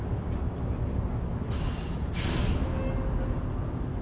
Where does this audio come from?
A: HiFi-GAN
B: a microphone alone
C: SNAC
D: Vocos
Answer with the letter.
B